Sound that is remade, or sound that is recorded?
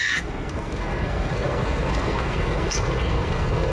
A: remade